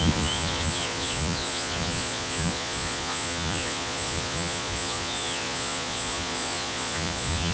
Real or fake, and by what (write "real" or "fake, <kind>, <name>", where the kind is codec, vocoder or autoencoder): fake, vocoder, Vocos